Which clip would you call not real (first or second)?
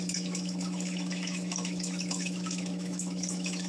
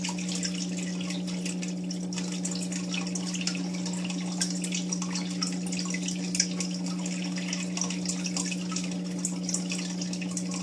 first